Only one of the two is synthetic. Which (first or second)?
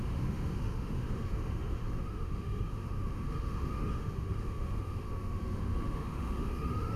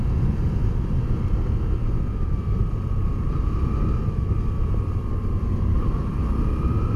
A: first